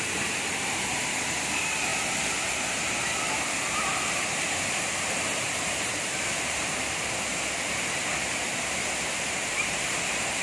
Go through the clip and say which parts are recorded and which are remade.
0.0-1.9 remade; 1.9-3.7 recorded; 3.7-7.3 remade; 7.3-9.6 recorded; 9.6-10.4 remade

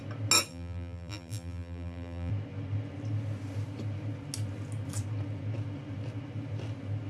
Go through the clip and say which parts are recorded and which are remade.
0.0-0.5 recorded; 0.5-2.3 remade; 2.3-7.1 recorded

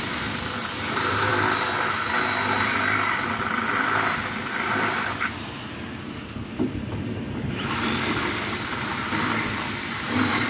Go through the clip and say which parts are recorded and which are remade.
0.0-1.3 remade; 1.3-6.0 recorded; 6.0-10.5 remade

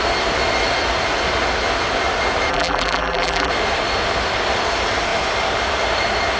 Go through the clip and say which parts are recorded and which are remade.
0.0-2.5 recorded; 2.5-3.5 remade; 3.5-6.4 recorded

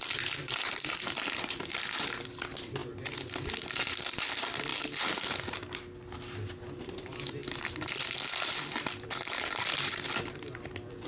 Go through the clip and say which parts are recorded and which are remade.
0.0-2.8 remade; 2.8-3.6 recorded; 3.6-4.7 remade; 4.7-6.8 recorded; 6.8-11.1 remade

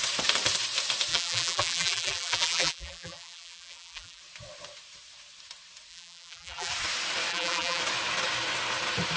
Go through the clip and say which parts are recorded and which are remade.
0.0-1.1 recorded; 1.1-4.2 remade; 4.2-5.9 recorded; 5.9-6.7 remade; 6.7-7.3 recorded; 7.3-7.8 remade; 7.8-9.2 recorded

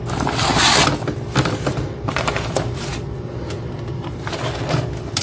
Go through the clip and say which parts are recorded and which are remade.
0.0-0.5 remade; 0.5-1.4 recorded; 1.4-5.2 remade